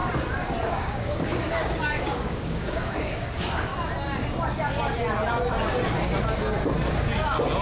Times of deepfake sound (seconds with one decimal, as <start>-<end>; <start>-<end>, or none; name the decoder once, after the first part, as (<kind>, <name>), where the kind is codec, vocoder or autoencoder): 0.7-3.7 (codec, DAC)